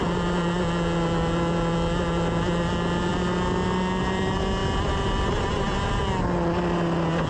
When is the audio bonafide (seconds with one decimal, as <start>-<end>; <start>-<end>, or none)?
0.0-7.3